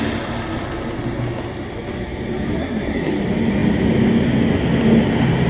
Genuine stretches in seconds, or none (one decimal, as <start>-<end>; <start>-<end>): 0.0-2.6; 3.1-5.5